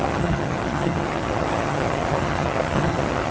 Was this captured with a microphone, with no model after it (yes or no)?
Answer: no